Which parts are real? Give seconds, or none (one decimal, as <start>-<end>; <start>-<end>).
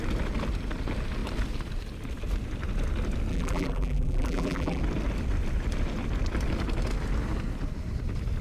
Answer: 0.0-3.3; 4.8-8.4